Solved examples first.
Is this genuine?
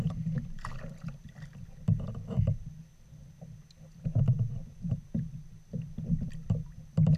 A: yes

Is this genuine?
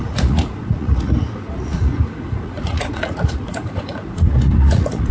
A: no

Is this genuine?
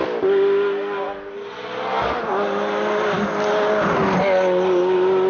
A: yes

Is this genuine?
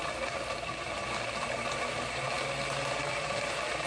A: yes